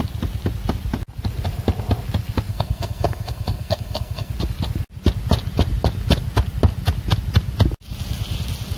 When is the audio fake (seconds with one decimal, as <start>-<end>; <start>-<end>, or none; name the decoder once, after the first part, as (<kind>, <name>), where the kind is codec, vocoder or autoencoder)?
2.5-4.3 (codec, SNAC)